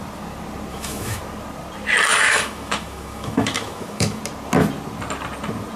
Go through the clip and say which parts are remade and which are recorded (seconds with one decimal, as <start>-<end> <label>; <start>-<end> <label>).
0.0-0.7 recorded; 0.7-1.2 remade; 1.2-2.1 recorded; 2.1-4.2 remade; 4.2-5.8 recorded